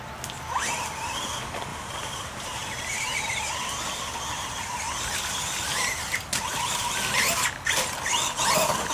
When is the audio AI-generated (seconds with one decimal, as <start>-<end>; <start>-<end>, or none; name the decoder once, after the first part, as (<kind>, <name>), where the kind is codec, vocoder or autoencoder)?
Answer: 1.7-3.3 (vocoder, BigVGAN v2)